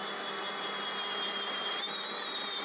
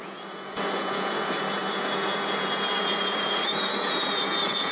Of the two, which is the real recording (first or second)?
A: first